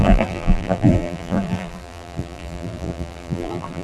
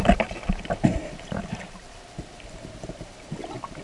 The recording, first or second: second